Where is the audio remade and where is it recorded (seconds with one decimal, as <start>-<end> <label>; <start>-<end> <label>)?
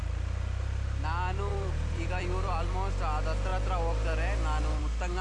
0.0-1.5 recorded; 1.5-2.7 remade; 2.7-5.2 recorded